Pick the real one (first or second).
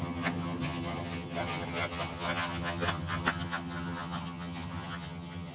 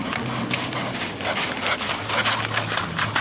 second